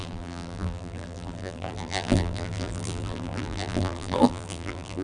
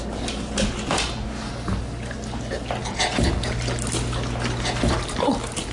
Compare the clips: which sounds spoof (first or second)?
first